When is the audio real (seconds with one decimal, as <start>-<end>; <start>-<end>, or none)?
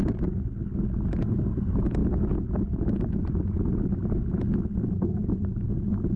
0.0-6.2